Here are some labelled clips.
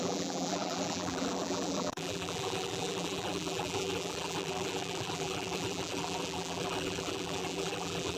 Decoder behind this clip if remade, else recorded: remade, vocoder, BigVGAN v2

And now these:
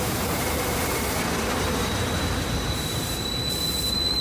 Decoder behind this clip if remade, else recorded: remade, vocoder, BigVGAN v2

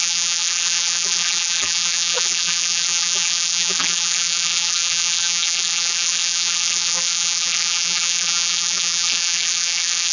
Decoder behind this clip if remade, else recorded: remade, vocoder, BigVGAN v2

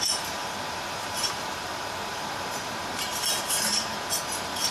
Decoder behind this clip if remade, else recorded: remade, vocoder, BigVGAN v2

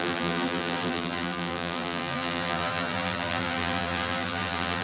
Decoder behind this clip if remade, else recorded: remade, vocoder, BigVGAN v2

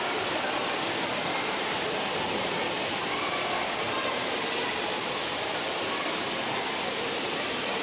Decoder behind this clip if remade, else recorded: remade, vocoder, BigVGAN v2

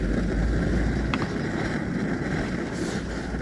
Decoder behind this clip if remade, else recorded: remade, vocoder, BigVGAN v2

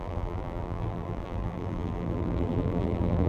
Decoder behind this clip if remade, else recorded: remade, vocoder, BigVGAN v2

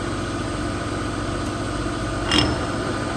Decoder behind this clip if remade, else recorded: recorded